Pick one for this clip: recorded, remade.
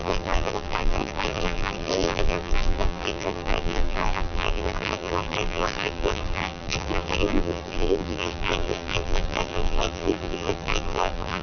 remade